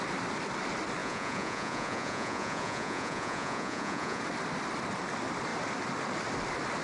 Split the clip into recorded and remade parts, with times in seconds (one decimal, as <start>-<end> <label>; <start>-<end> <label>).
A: 0.0-1.0 recorded; 1.0-4.2 remade; 4.2-6.8 recorded